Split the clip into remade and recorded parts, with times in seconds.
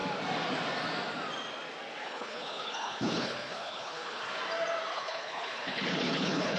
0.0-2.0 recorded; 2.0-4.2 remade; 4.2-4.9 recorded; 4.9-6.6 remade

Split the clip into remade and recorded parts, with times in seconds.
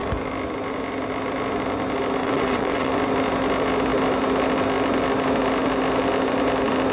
0.0-2.2 recorded; 2.2-2.9 remade; 2.9-6.9 recorded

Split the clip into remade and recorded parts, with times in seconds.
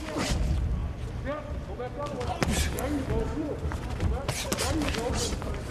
0.0-5.7 remade